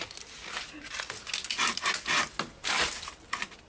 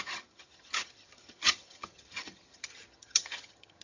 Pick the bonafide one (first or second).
first